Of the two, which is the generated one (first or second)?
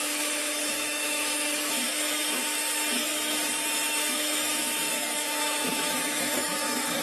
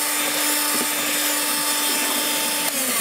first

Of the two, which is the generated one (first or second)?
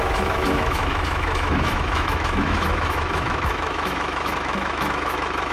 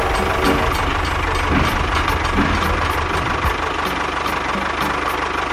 first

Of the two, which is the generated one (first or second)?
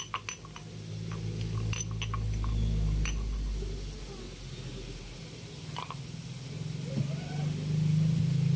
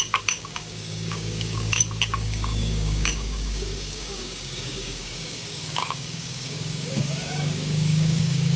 second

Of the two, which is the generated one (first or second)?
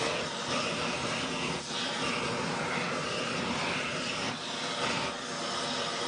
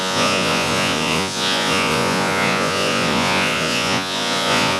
second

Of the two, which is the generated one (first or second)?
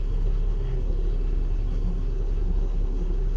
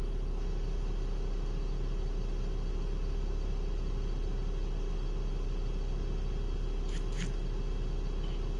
first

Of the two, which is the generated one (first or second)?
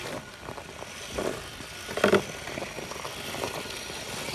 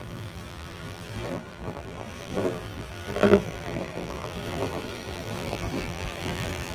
second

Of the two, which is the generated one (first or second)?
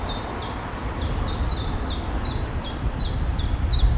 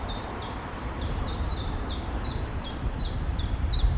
second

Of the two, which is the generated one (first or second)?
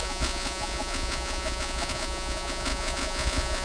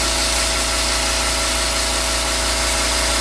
first